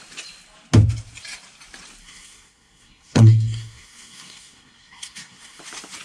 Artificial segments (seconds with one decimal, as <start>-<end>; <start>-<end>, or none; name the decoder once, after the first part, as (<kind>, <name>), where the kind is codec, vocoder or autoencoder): 2.0-5.6 (codec, SNAC)